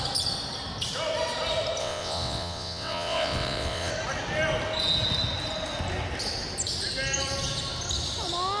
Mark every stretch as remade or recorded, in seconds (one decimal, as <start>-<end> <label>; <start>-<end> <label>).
0.0-1.8 recorded; 1.8-3.9 remade; 3.9-8.6 recorded